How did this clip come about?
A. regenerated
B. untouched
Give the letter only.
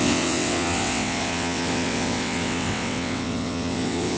A